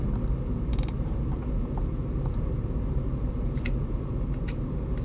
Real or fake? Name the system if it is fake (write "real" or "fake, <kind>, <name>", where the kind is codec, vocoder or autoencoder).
real